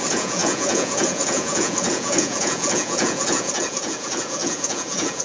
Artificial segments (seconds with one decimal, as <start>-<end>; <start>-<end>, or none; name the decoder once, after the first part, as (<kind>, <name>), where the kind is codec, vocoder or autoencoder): 0.0-5.2 (vocoder, Vocos)